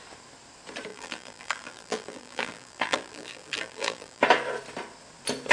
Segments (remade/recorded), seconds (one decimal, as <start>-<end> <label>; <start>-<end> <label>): 0.0-0.9 recorded; 0.9-4.2 remade; 4.2-5.5 recorded